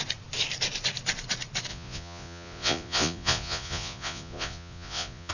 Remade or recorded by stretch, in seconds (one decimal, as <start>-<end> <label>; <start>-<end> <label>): 0.0-1.7 recorded; 1.7-5.3 remade